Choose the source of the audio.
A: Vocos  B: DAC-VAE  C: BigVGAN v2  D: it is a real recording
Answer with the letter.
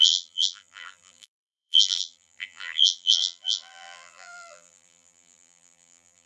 C